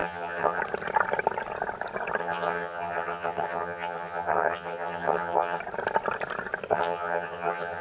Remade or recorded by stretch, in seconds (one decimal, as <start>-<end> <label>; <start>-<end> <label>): 0.0-0.6 remade; 0.6-2.2 recorded; 2.2-5.6 remade; 5.6-6.7 recorded; 6.7-7.8 remade